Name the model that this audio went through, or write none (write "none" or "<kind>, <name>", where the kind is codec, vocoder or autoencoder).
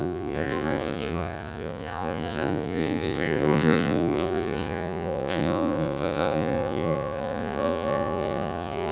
vocoder, Vocos